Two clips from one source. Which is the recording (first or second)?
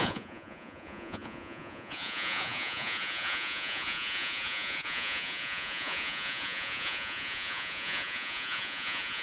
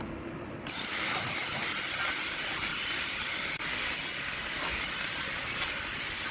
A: second